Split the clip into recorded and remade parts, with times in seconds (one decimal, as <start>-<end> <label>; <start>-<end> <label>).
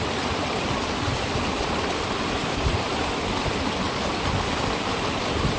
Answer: 0.0-2.4 recorded; 2.4-2.9 remade; 2.9-5.6 recorded